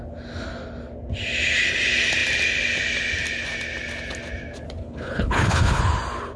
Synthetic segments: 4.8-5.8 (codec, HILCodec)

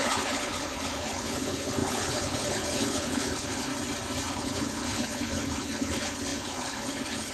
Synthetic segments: 0.0-3.7 (codec, HILCodec); 4.3-7.3